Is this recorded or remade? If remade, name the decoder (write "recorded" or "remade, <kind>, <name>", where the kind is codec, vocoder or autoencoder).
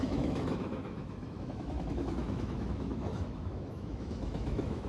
remade, autoencoder, DAC-VAE